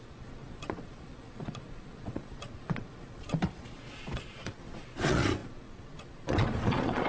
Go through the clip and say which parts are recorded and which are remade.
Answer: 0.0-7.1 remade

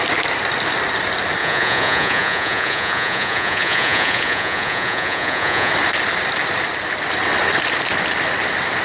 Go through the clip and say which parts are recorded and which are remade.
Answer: 0.0-1.4 recorded; 1.4-5.7 remade; 5.7-8.8 recorded

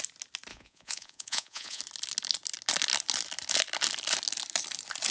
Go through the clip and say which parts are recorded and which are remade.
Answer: 0.0-0.5 recorded; 0.5-1.8 remade; 1.8-5.1 recorded

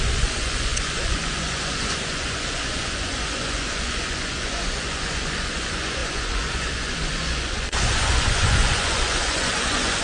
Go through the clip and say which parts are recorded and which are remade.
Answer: 0.0-10.0 remade